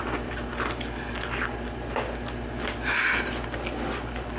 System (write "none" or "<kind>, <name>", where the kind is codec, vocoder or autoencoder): none